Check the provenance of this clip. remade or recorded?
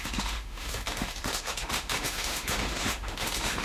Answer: remade